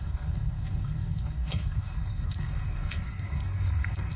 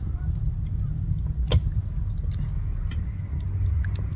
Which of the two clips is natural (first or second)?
second